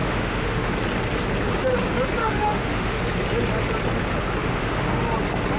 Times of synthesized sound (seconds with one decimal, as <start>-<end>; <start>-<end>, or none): 0.0-0.7; 2.2-3.0; 4.4-5.0